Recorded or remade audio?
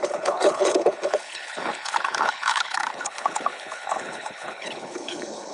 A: remade